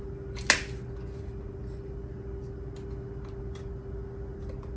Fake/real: real